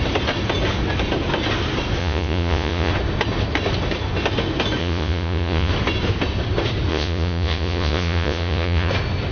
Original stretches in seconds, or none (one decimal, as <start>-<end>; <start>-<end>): 0.0-2.0; 2.9-4.8; 5.7-6.9; 8.9-9.3